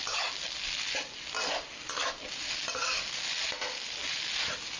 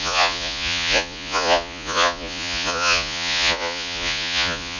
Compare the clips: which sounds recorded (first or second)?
first